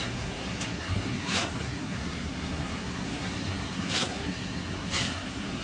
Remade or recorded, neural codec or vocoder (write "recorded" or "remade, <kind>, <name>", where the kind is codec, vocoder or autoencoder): remade, codec, SNAC